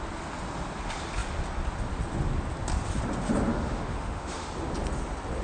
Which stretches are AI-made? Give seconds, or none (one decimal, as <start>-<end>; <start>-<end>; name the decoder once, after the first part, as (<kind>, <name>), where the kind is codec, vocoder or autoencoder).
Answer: 3.5-4.5 (autoencoder, DAC-VAE)